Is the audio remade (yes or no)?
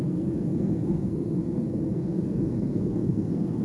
yes